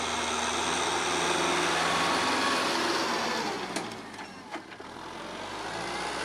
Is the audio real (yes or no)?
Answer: yes